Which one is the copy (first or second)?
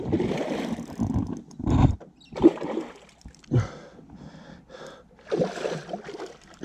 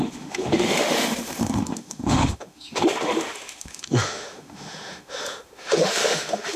second